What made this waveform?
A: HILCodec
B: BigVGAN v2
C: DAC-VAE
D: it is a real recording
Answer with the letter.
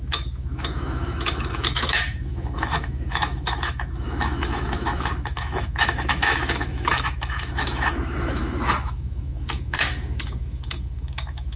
C